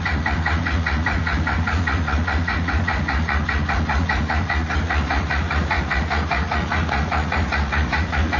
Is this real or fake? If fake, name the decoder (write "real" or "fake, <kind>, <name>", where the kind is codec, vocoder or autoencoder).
fake, vocoder, Vocos